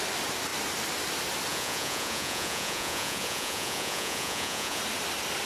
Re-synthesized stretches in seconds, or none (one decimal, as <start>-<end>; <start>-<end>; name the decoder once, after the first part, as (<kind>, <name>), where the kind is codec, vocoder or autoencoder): 1.5-4.8 (vocoder, Vocos)